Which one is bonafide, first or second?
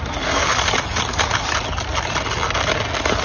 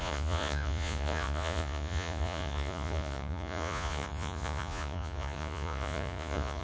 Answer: first